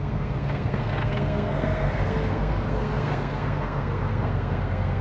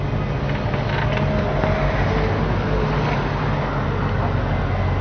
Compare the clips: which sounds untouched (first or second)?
second